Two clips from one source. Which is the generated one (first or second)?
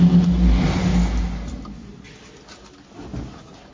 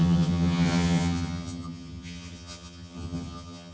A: second